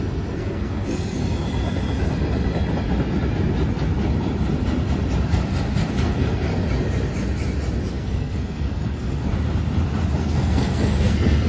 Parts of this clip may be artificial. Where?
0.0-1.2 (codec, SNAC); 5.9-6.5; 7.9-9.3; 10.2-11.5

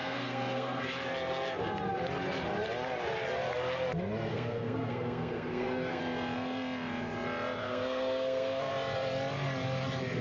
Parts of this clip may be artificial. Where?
0.0-0.8 (codec, SNAC); 4.3-6.0; 7.6-8.7

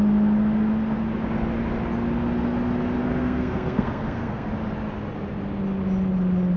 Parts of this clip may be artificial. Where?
3.0-4.5 (codec, SNAC)

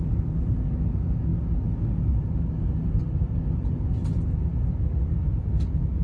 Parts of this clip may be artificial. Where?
none

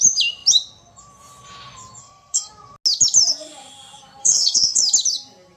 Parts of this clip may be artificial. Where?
2.0-2.5 (codec, SNAC); 4.2-4.8

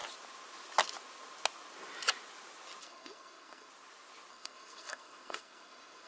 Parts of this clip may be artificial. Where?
2.8-3.7 (codec, SNAC); 4.3-6.1

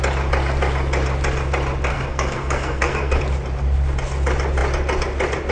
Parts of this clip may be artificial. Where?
1.9-3.2 (codec, SNAC)

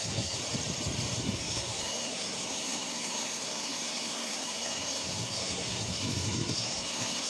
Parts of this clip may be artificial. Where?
0.0-0.4 (codec, SNAC); 1.2-7.3